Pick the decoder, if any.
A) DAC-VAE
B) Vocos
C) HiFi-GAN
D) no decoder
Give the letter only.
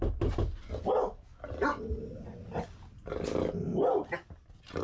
D